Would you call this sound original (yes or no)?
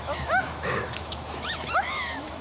no